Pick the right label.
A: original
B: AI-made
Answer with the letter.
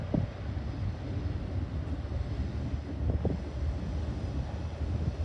A